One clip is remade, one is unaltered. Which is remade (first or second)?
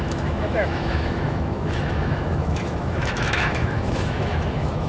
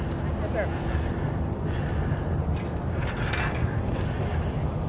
first